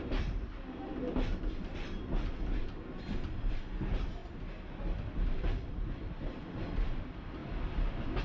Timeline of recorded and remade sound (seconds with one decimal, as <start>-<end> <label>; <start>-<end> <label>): 0.0-1.3 recorded; 1.3-2.4 remade; 2.4-4.2 recorded; 4.2-6.1 remade; 6.1-7.4 recorded; 7.4-8.2 remade